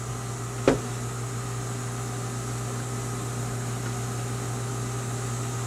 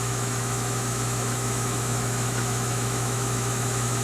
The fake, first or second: second